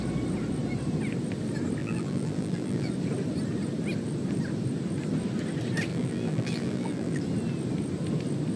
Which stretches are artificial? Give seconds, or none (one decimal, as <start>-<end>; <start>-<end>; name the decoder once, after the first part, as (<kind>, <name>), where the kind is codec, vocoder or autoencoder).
1.8-2.9 (vocoder, BigVGAN v2); 5.9-7.2